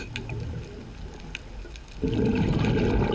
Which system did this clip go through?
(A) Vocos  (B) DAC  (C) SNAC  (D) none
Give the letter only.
D